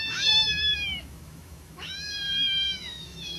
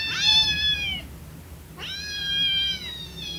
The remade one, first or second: first